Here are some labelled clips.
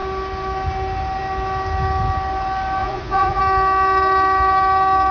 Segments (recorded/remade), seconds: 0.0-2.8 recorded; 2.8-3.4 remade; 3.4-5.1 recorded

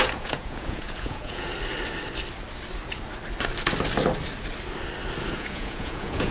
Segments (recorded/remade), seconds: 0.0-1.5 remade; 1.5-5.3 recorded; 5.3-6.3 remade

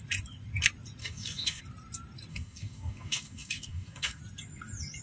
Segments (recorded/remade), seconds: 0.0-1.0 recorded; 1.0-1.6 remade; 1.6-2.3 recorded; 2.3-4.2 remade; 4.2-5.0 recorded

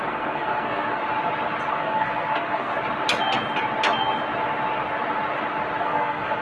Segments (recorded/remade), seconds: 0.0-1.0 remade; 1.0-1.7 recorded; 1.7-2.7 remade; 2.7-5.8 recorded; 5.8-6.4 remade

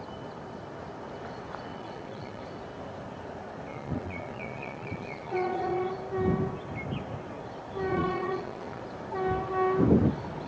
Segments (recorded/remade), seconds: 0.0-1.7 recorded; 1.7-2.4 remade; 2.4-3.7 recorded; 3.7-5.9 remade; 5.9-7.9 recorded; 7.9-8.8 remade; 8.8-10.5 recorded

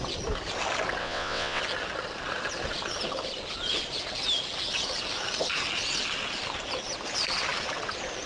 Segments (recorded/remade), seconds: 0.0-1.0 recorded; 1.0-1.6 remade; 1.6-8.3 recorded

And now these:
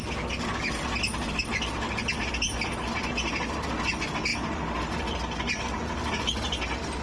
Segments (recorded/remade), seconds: 0.0-7.0 recorded

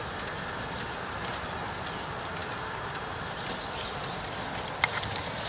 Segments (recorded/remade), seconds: 0.0-5.5 recorded